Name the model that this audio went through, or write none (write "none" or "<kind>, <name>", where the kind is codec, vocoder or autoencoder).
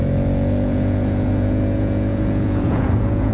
vocoder, Vocos